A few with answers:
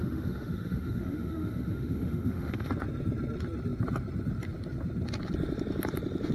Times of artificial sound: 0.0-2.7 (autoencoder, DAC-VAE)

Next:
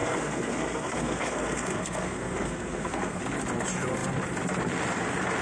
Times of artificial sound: 0.0-3.2 (codec, SNAC)

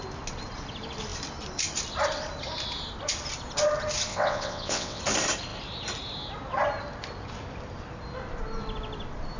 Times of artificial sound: 4.1-5.0 (vocoder, WaveNeXt)

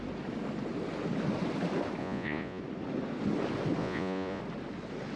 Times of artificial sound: 2.0-2.6 (vocoder, Vocos); 3.8-4.4

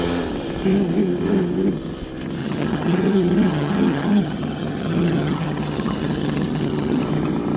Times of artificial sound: 2.4-7.0 (vocoder, HiFi-GAN)

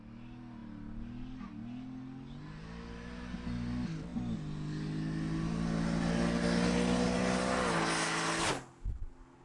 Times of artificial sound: none

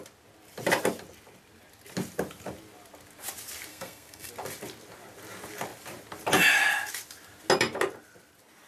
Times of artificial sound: 3.7-4.3 (codec, SNAC)

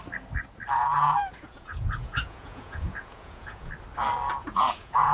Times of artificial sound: 0.7-3.7 (vocoder, Vocos); 4.4-5.1